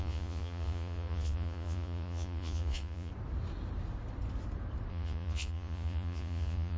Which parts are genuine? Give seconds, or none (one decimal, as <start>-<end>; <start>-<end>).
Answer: 3.1-4.9